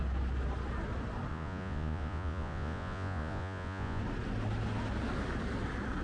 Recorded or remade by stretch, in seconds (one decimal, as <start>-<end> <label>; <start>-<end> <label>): 0.0-1.3 recorded; 1.3-4.0 remade; 4.0-6.0 recorded